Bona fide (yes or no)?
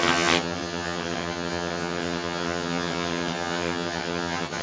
no